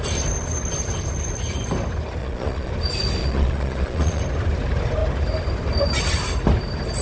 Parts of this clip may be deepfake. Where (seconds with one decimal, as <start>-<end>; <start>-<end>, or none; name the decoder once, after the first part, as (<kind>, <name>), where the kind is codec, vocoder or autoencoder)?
2.2-2.7 (vocoder, Vocos); 3.2-4.2